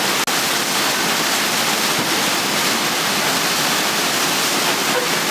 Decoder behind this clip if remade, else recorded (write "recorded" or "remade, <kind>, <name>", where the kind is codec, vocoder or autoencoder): recorded